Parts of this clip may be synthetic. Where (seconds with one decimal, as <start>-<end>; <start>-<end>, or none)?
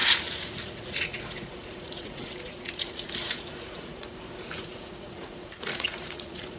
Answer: 0.0-6.6